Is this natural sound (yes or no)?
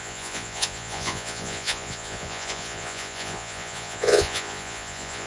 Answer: no